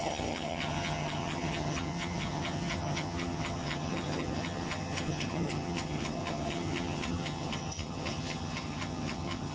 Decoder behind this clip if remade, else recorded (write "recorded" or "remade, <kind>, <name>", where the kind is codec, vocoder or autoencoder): remade, vocoder, HiFi-GAN